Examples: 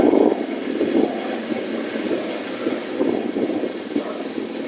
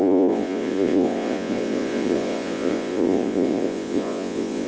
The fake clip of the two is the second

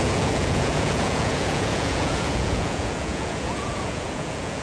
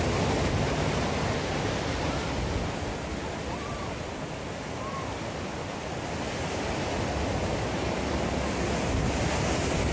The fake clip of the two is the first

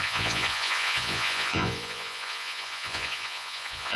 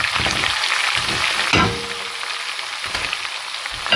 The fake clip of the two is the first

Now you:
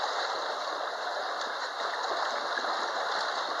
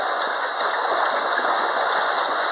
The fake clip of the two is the second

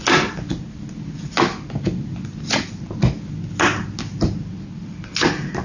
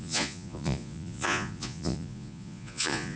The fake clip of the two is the second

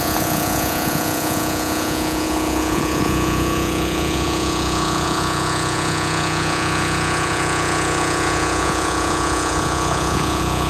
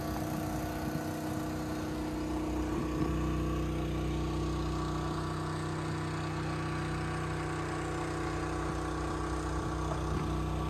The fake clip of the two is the first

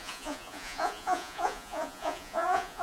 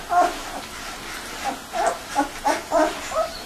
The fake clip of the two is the first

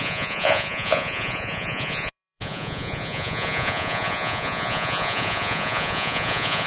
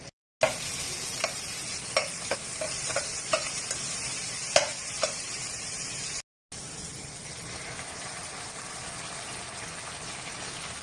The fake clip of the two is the first